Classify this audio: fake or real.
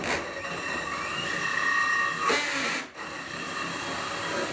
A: real